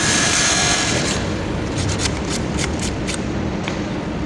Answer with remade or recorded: remade